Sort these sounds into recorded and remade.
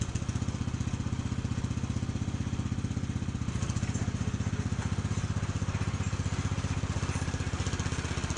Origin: recorded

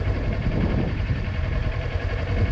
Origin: remade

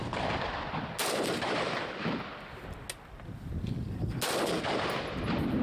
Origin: recorded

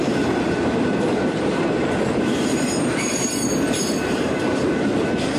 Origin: remade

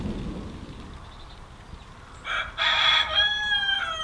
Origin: recorded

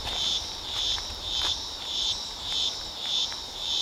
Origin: remade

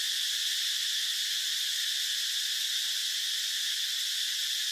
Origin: remade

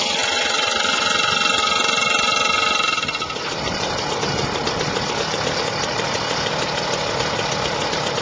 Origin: remade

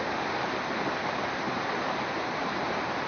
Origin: recorded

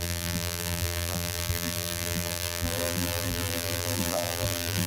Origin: remade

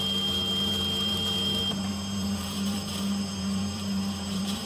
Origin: remade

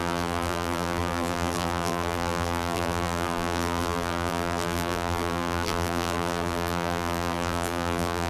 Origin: remade